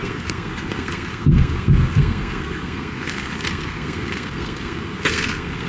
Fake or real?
fake